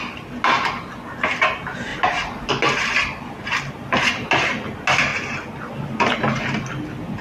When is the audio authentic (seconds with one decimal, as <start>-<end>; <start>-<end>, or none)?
0.0-1.9; 2.5-7.2